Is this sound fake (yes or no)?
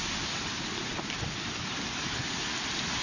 no